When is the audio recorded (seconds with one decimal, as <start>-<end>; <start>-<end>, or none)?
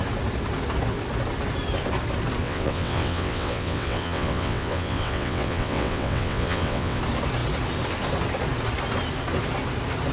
0.0-2.4; 7.0-10.1